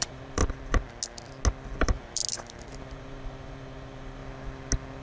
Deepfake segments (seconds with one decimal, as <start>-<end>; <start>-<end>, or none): 0.0-0.4; 1.8-2.2; 2.8-4.2